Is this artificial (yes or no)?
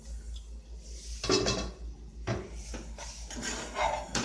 no